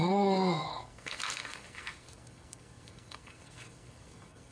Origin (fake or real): fake